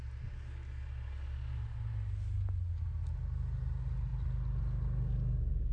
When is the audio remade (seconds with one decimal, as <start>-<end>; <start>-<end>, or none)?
none

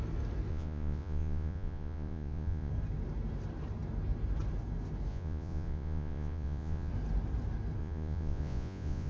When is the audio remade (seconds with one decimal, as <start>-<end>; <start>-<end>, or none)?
0.5-2.7; 5.1-6.9; 7.8-9.1